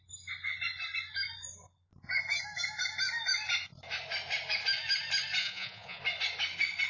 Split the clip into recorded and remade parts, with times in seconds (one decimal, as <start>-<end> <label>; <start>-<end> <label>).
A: 0.0-5.4 recorded; 5.4-6.0 remade; 6.0-6.9 recorded